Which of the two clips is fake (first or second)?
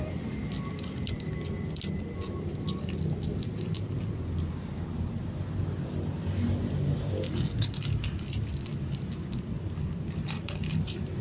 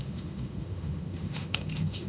second